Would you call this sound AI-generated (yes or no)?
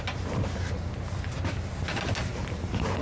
no